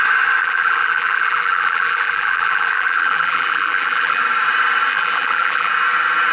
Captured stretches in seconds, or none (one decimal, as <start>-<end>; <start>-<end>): 0.0-0.4; 4.2-4.9; 5.7-6.3